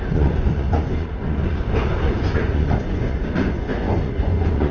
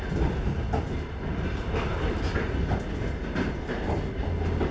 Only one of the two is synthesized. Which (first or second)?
first